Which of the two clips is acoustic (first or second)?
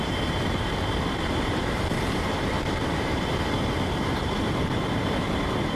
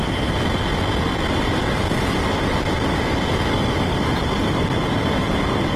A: second